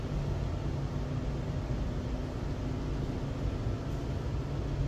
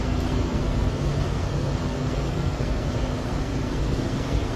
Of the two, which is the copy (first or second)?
second